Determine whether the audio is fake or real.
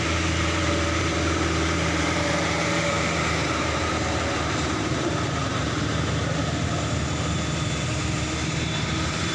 fake